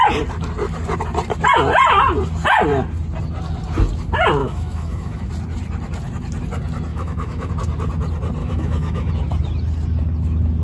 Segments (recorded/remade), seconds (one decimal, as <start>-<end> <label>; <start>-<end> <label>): 0.0-4.4 recorded; 4.4-5.3 remade; 5.3-6.9 recorded; 6.9-7.5 remade; 7.5-8.4 recorded; 8.4-9.1 remade; 9.1-10.6 recorded